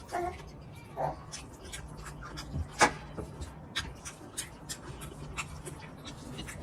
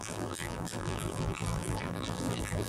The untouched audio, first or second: first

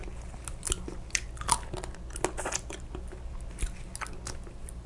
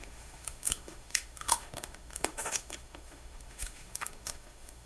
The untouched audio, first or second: first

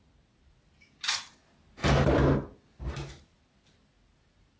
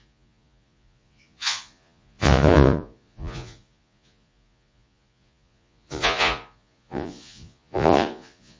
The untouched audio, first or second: first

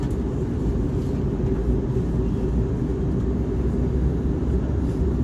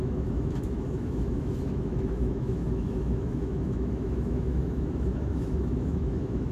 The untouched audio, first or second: first